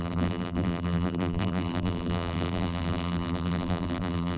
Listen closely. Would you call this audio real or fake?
fake